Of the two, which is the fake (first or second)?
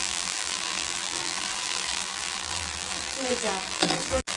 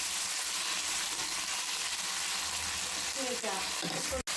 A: first